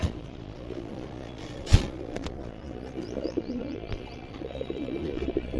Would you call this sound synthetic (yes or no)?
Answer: yes